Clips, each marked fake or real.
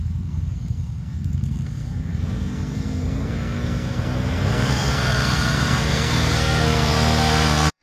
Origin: fake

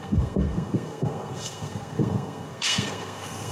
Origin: fake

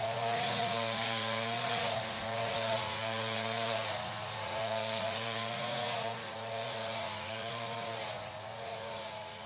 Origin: fake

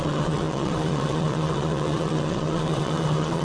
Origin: fake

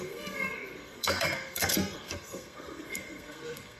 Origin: fake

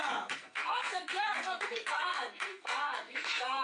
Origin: fake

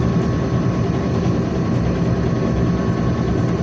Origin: real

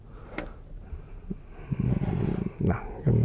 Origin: real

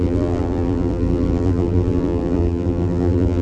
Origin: fake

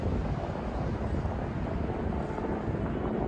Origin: real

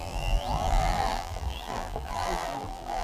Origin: fake